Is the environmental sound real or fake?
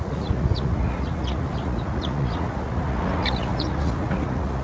fake